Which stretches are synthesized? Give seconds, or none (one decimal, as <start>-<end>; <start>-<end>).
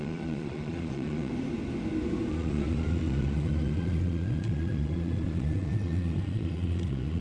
0.0-1.3; 2.3-7.2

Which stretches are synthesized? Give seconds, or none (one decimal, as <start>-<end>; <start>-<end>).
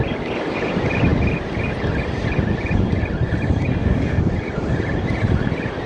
3.7-4.2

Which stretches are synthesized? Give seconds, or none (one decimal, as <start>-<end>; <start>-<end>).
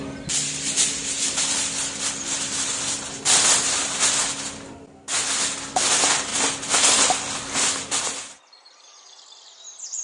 0.0-3.8; 4.6-6.3; 8.0-10.0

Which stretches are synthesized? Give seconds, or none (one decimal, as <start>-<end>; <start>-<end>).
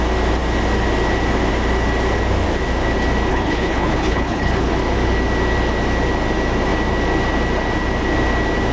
3.3-4.7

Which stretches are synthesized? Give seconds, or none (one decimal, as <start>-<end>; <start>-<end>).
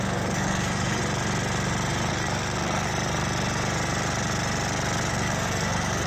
0.0-1.0; 2.1-2.9; 5.1-6.1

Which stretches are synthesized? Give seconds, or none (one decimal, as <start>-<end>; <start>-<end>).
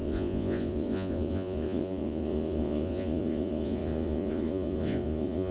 0.0-5.5